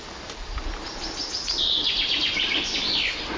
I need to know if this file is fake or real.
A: real